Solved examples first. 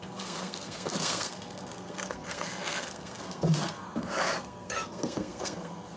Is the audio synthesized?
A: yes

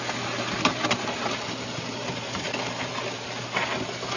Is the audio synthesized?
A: no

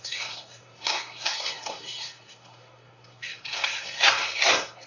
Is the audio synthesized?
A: yes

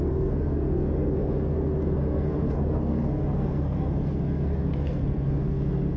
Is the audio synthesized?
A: yes